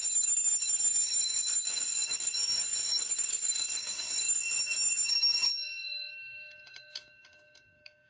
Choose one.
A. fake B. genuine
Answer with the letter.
A